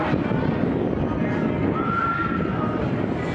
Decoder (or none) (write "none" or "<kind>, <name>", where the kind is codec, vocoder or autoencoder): none